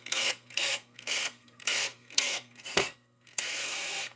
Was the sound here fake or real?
fake